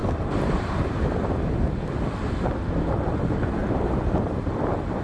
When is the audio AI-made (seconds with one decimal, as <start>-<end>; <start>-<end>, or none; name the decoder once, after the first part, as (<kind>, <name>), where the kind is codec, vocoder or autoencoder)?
none